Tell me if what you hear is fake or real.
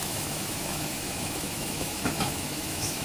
fake